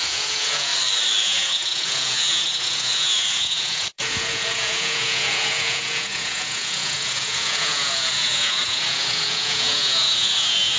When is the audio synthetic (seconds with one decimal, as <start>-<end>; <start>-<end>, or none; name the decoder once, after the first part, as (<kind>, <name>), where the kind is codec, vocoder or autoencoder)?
0.0-0.7 (vocoder, Vocos); 1.2-10.8